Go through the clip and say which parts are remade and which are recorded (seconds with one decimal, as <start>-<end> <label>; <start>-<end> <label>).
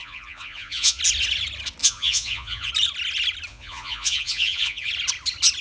0.0-1.0 remade; 1.0-1.8 recorded; 1.8-2.7 remade; 2.7-3.5 recorded; 3.5-4.9 remade; 4.9-5.6 recorded